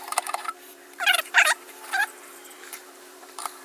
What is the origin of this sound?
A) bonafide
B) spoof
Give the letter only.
B